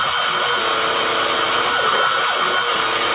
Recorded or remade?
recorded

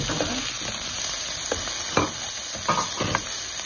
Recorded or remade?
recorded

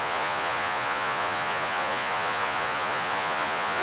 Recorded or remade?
remade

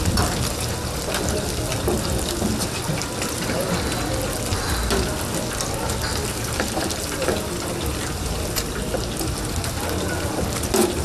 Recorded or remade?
recorded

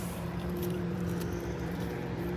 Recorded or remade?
remade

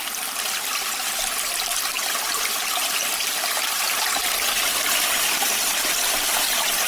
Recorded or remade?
recorded